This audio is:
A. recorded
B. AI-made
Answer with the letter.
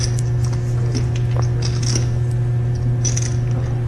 A